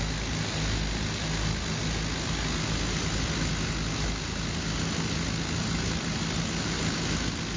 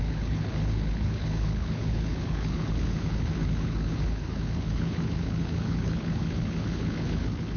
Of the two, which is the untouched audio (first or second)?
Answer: first